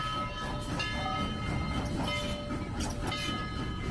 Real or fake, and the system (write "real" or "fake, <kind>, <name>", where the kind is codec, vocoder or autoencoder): real